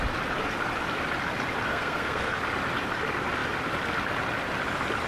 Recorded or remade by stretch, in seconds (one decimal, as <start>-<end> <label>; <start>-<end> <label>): 0.0-1.7 recorded; 1.7-2.4 remade; 2.4-5.1 recorded